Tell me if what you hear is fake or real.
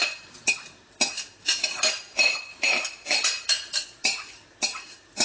real